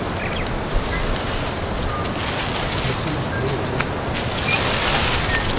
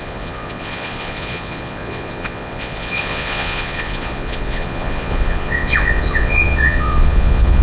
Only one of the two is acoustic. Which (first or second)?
first